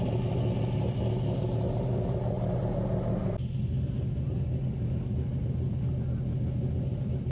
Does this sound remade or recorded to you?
recorded